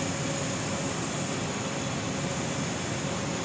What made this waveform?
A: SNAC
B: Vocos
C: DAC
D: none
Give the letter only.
D